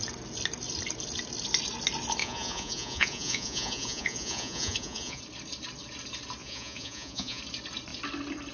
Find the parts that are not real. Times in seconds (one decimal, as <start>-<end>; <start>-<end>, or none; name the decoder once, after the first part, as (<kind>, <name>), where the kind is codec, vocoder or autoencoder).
2.2-5.2 (vocoder, Vocos); 6.4-7.4